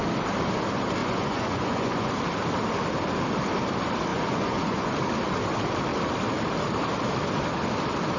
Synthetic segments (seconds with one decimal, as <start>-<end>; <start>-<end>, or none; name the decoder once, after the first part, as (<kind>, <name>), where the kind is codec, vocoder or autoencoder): 1.0-2.1 (vocoder, Vocos); 4.1-4.9